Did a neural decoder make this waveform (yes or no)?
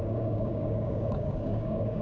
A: yes